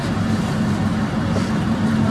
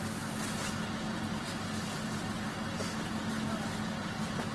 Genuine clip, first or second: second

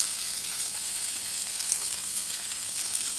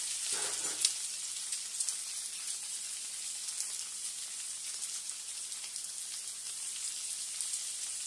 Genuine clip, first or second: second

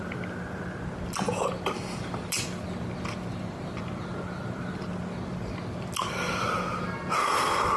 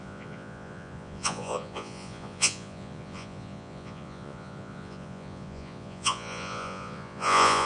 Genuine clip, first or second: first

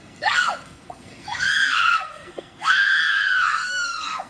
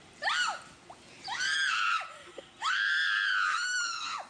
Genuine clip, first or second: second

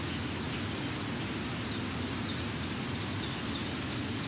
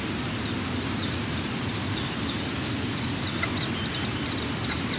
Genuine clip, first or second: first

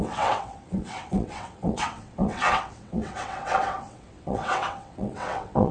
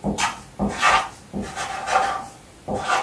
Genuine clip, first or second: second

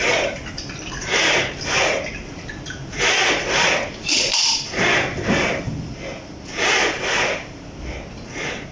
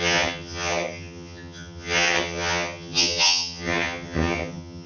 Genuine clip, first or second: first